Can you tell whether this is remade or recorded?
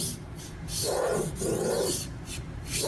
remade